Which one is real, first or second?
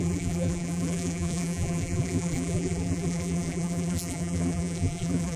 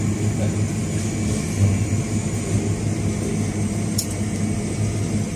second